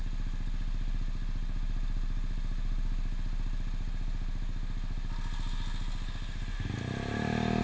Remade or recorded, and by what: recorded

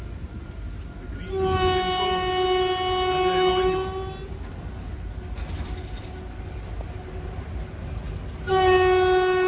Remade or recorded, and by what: recorded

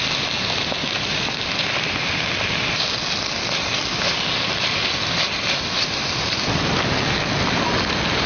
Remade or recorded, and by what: recorded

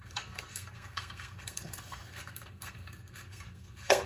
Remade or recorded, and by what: remade, codec, SNAC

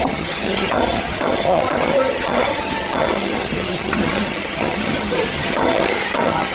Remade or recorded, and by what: remade, vocoder, HiFi-GAN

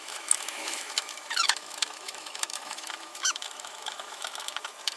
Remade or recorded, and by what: remade, autoencoder, DAC-VAE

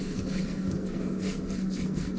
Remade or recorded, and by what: remade, codec, SNAC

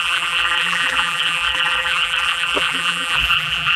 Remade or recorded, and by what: remade, vocoder, BigVGAN v2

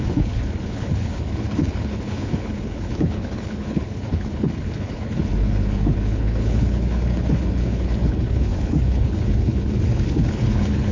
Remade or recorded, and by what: remade, codec, HILCodec